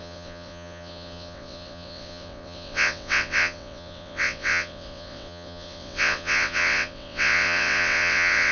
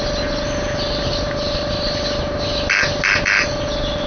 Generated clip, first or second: first